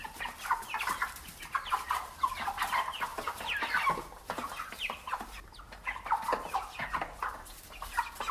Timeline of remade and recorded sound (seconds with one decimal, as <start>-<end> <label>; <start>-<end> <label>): 0.0-8.3 recorded